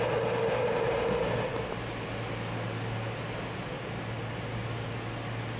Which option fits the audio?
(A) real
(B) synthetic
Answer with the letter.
A